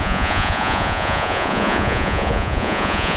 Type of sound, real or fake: fake